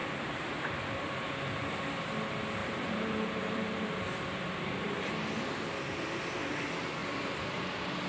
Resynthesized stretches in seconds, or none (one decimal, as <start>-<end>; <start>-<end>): 0.0-1.3; 2.6-3.9; 7.0-7.6